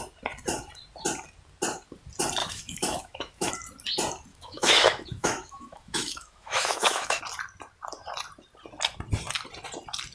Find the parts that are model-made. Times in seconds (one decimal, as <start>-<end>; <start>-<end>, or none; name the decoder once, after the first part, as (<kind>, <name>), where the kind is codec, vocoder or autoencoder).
2.4-3.5 (autoencoder, DAC-VAE); 4.3-7.2